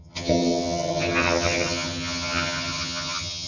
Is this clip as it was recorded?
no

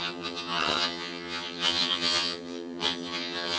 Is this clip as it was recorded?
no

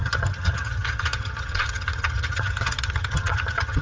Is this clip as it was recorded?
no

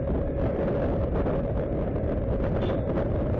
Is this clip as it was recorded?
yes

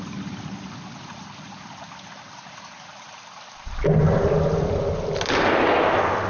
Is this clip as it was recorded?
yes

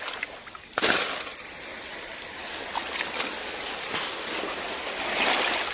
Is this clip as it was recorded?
yes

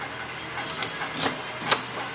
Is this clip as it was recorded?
yes